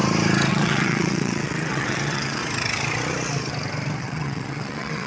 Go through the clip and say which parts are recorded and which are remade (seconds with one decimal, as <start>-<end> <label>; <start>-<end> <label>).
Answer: 0.0-0.5 recorded; 0.5-2.4 remade; 2.4-4.0 recorded; 4.0-5.1 remade